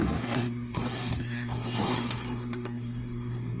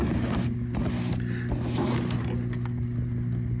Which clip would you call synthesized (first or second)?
first